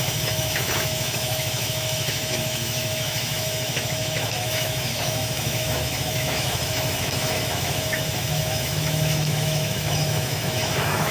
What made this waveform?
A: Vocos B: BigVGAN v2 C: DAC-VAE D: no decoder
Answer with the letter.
C